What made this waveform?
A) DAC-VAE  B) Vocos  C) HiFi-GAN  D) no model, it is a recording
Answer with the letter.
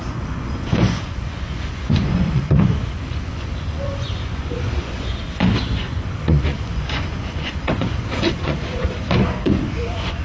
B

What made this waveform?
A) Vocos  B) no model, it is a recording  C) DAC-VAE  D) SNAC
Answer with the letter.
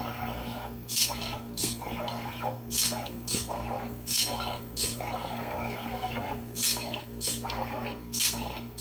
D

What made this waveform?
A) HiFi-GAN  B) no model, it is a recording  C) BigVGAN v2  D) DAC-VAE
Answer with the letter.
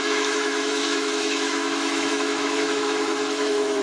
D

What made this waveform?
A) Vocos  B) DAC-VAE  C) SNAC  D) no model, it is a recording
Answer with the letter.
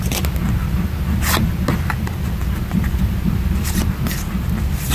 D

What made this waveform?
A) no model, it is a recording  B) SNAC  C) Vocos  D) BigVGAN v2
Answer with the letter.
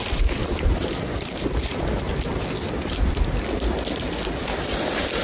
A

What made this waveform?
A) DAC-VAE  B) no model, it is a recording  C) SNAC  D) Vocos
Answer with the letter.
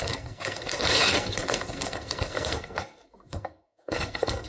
C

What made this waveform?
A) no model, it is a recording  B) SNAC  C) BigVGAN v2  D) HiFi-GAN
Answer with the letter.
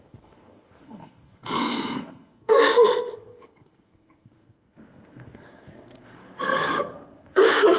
B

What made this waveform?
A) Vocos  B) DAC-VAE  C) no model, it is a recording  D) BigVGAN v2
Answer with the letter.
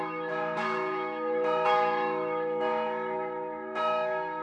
B